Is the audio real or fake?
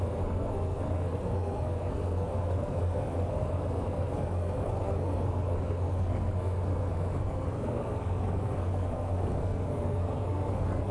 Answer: fake